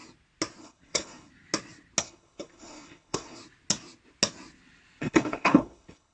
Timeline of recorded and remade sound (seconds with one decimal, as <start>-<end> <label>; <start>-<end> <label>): 0.0-0.6 recorded; 0.6-1.3 remade; 1.3-2.0 recorded; 2.0-3.4 remade; 3.4-5.0 recorded; 5.0-6.1 remade